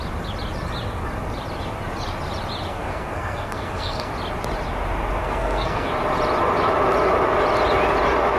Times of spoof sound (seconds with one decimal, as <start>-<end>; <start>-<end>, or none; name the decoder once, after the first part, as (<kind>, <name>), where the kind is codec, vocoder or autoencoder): 2.7-4.1 (codec, SNAC); 5.2-5.9